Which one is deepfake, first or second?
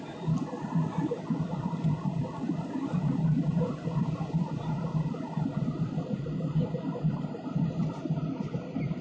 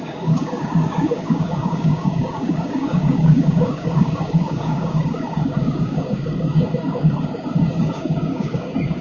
second